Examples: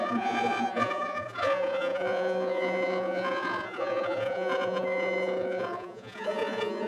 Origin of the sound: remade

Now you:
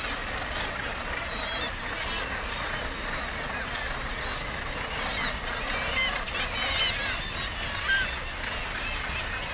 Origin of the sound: recorded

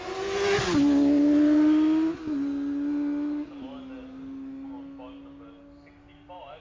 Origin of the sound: recorded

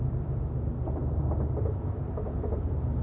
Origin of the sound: recorded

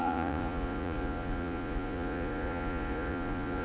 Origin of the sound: remade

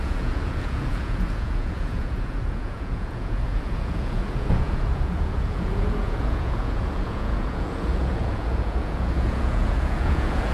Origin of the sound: remade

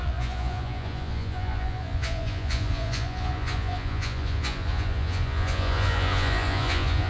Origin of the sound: remade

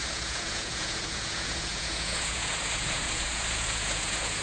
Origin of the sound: remade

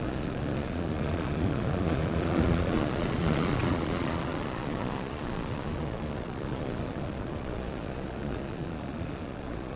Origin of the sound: remade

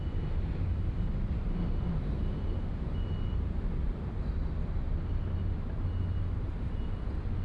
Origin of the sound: recorded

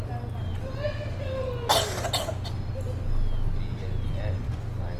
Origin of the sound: recorded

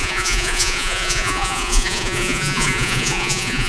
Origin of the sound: remade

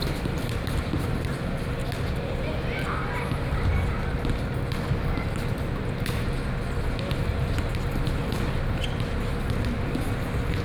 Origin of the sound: recorded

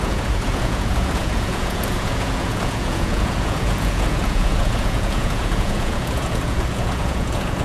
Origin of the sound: remade